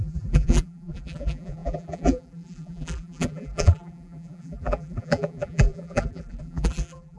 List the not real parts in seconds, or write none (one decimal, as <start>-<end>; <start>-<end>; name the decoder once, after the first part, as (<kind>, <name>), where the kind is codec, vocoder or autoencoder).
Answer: 0.0-7.2 (vocoder, BigVGAN v2)